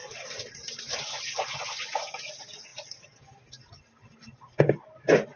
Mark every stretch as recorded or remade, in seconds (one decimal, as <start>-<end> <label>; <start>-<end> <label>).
0.0-5.4 recorded